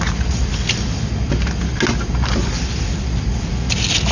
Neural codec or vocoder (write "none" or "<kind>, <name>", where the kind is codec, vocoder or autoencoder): none